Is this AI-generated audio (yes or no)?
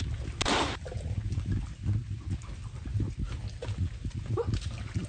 no